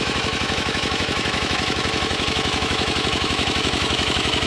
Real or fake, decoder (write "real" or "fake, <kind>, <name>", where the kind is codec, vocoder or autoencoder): fake, autoencoder, DAC-VAE